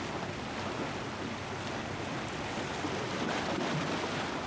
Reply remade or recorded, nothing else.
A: recorded